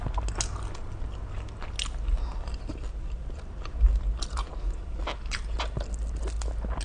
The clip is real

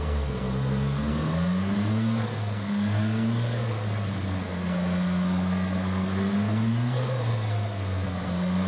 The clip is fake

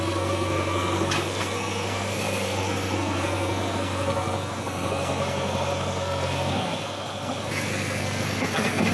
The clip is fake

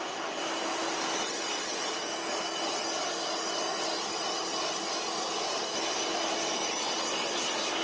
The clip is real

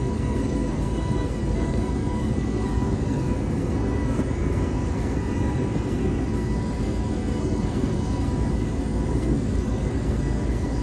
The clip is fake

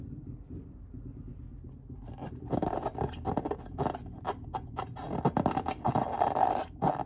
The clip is fake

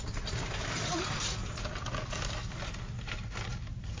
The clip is real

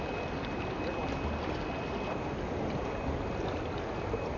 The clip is real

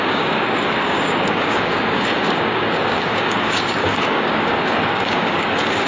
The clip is fake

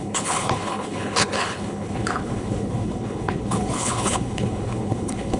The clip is fake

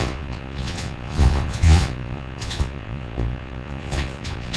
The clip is fake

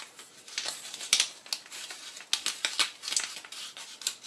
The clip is real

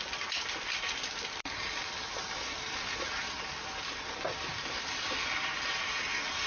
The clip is real